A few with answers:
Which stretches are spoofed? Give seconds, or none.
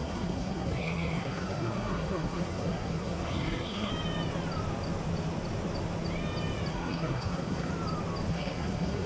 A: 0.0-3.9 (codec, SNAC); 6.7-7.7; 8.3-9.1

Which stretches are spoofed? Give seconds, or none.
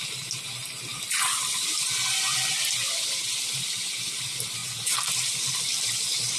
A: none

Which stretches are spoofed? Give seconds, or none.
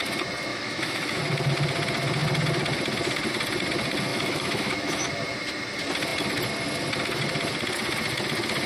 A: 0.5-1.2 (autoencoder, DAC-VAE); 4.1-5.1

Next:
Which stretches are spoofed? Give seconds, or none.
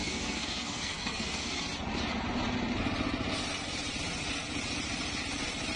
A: 0.0-1.6 (codec, SNAC)